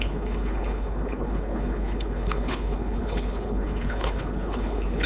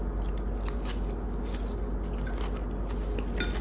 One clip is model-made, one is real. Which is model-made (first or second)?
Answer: first